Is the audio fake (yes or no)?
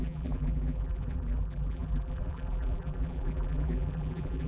yes